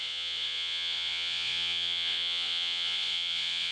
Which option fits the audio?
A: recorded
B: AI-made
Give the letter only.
B